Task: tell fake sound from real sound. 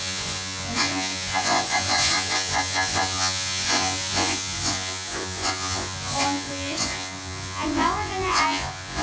fake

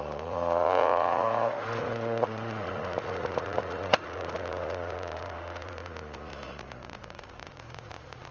fake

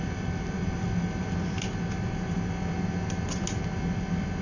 real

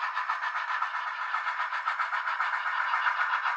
real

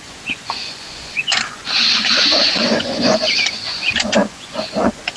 fake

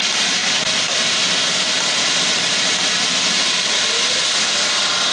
real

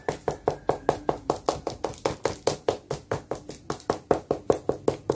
real